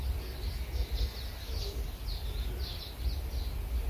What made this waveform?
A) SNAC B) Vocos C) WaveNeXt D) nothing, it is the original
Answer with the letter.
D